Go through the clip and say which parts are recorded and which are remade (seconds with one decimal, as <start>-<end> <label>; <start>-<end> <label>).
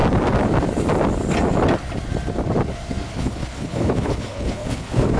0.0-3.1 recorded; 3.1-5.2 remade